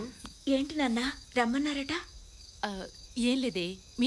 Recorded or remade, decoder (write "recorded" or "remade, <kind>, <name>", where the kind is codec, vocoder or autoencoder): remade, autoencoder, DAC-VAE